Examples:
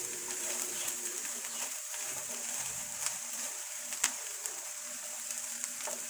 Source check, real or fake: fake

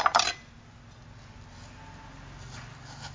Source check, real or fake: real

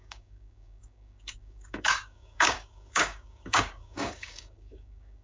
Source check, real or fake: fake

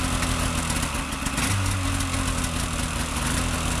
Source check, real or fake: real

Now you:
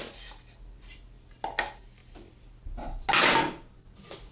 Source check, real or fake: real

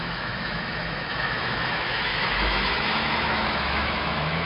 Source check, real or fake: fake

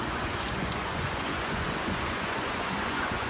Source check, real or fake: fake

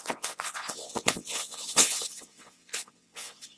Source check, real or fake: fake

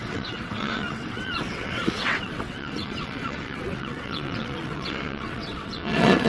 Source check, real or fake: fake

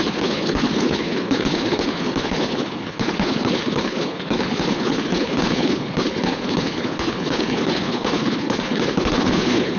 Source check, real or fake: fake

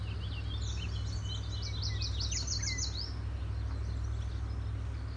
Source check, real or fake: real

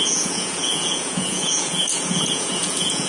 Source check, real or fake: fake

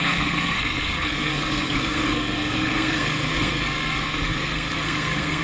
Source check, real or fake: fake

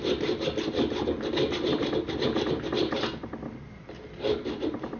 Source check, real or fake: real